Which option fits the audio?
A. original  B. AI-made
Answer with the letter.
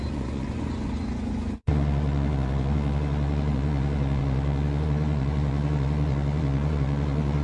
B